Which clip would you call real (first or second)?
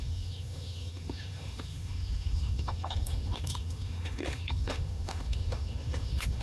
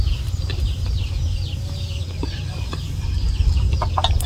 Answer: second